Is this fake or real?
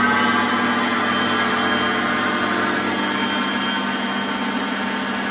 real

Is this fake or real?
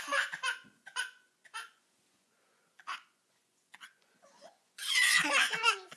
fake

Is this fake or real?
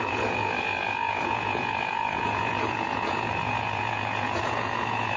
fake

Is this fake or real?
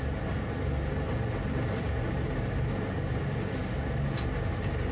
real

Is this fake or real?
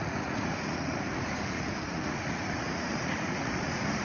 fake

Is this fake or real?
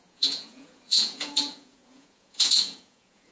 fake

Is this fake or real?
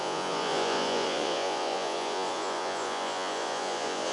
fake